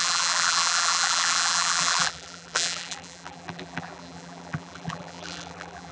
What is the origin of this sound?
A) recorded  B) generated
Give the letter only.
B